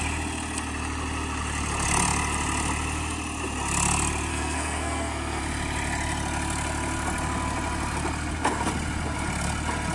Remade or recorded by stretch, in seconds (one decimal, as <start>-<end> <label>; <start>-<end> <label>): 0.0-4.3 recorded; 4.3-5.4 remade; 5.4-9.9 recorded